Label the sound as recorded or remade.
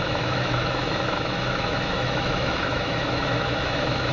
remade